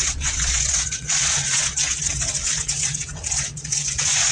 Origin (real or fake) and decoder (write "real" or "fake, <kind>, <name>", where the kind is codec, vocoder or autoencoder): fake, vocoder, WaveNeXt